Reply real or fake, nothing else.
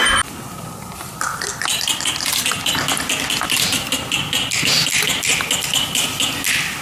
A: real